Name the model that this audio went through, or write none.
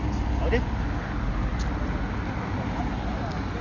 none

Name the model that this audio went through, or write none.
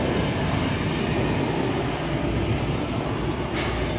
none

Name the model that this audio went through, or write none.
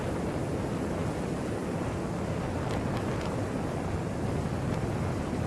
none